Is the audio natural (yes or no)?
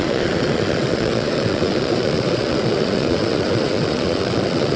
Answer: no